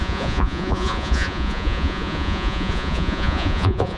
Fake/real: fake